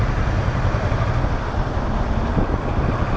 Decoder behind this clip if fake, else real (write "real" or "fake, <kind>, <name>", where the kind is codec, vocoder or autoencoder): real